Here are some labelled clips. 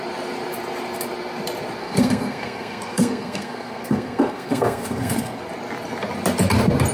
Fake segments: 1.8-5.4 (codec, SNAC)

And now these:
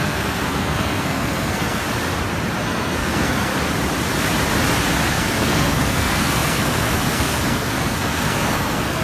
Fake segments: 0.0-1.8 (codec, SNAC); 2.6-3.5; 5.1-9.0

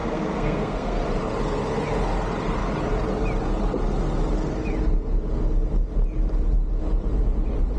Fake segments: 0.0-1.0 (codec, SNAC)

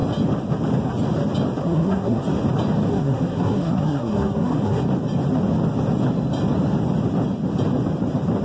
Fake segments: 1.6-2.2 (codec, SNAC); 2.9-4.8

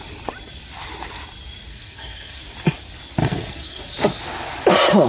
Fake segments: 1.7-2.4 (codec, SNAC); 3.2-3.8